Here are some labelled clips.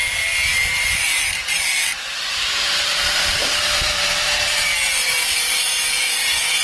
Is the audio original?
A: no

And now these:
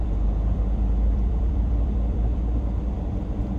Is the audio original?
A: no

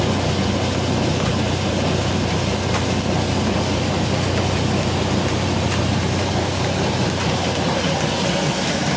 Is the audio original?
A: yes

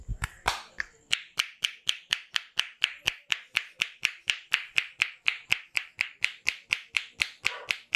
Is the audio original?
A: no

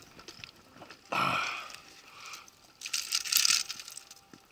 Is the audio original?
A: yes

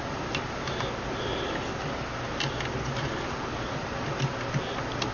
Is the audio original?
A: yes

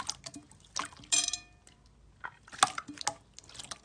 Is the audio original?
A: yes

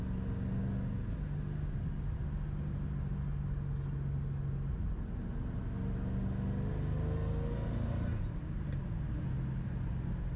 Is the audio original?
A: yes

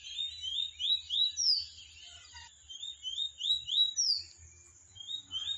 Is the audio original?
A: yes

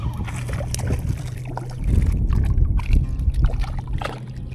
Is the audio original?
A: yes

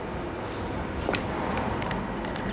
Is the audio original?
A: no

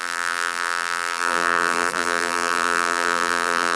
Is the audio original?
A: no